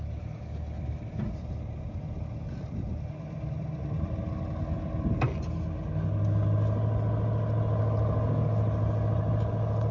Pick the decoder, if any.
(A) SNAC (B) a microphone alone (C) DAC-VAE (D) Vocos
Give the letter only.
B